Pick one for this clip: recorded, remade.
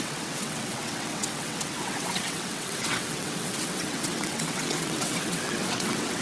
remade